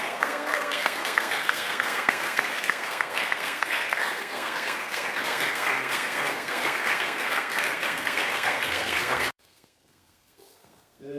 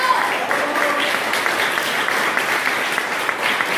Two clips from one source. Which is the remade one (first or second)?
first